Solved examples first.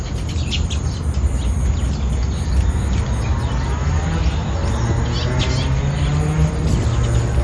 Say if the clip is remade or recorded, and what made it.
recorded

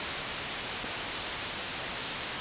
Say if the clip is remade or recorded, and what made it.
recorded